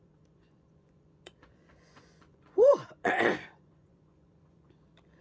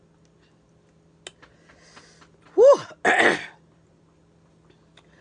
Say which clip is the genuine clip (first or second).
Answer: second